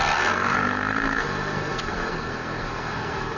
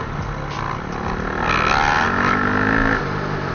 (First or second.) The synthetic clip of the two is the first